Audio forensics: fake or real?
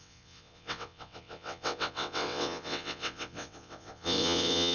fake